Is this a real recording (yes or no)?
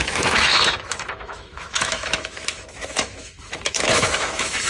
no